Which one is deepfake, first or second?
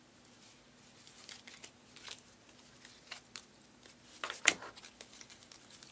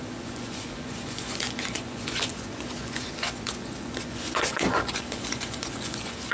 second